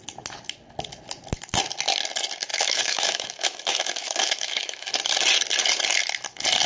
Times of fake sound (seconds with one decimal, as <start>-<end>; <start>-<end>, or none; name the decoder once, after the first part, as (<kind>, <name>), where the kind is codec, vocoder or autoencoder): 2.5-4.9 (autoencoder, DAC-VAE)